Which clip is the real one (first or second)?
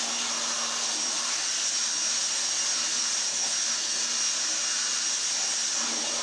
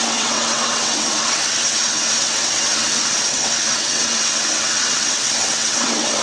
first